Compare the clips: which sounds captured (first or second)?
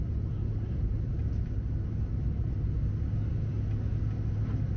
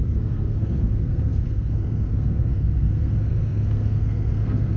first